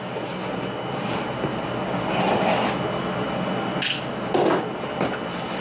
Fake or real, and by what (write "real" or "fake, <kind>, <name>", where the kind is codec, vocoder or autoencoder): real